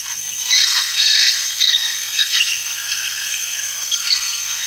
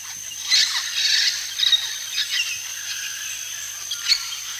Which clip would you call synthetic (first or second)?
first